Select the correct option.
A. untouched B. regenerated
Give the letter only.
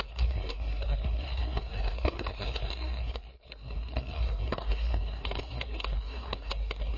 B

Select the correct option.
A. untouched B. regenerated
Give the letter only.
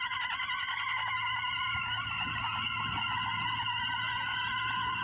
A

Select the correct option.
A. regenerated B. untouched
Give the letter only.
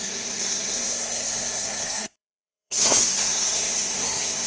A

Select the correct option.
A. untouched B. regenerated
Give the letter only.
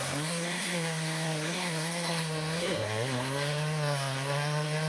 B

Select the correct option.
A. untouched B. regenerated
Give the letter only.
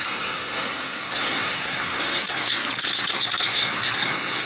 B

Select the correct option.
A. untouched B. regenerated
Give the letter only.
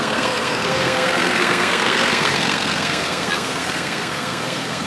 B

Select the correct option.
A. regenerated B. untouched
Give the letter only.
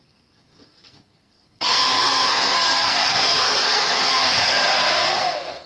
A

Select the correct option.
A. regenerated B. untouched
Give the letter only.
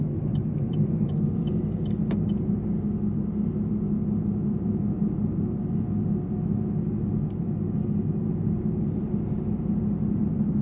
B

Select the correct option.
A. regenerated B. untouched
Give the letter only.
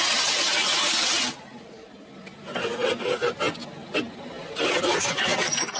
B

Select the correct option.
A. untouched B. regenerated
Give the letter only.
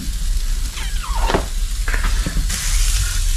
A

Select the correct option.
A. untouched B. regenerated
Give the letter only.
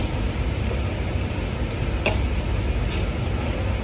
A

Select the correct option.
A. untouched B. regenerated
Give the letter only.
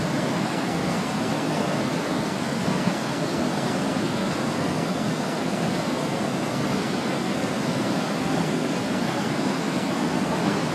B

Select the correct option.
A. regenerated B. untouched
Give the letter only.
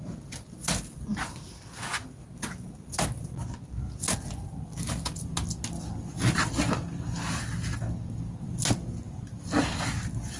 B